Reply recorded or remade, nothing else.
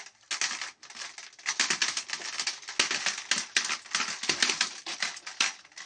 recorded